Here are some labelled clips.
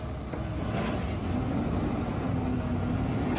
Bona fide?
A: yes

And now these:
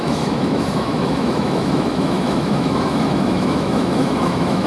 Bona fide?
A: no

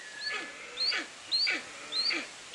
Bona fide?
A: yes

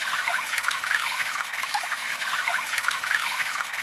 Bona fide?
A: no